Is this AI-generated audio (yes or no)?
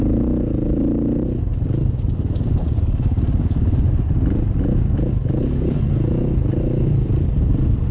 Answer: no